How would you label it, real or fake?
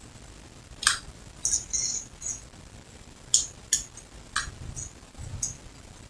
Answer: real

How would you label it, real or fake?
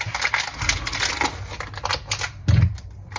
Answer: real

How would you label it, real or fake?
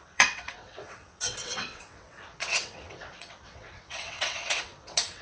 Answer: fake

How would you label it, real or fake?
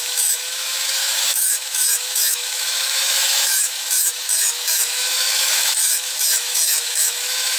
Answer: fake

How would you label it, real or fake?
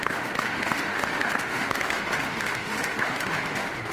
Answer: fake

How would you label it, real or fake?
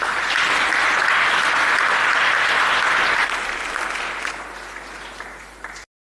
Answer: real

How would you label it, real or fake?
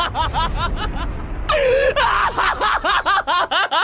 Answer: real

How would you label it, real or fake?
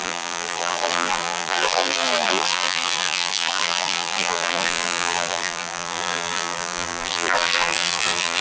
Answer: fake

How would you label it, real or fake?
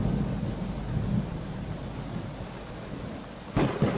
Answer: real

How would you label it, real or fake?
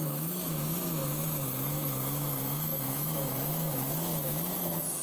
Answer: fake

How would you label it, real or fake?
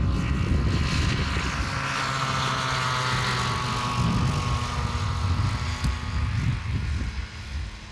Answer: real